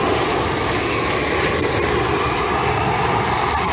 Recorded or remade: recorded